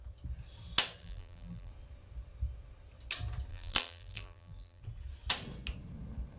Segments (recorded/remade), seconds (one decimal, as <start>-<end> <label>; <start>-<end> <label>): 0.0-1.0 recorded; 1.0-1.7 remade; 1.7-3.5 recorded; 3.5-4.8 remade; 4.8-6.4 recorded